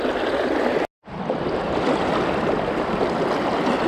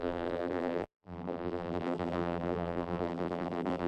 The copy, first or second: second